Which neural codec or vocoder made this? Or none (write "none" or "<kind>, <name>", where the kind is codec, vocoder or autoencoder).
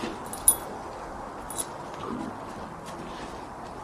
none